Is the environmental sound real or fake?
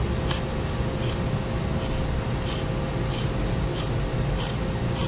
real